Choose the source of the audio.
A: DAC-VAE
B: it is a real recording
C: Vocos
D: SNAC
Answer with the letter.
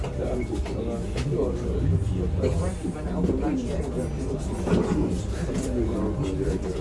B